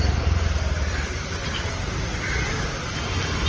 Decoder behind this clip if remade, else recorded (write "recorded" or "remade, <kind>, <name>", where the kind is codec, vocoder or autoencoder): recorded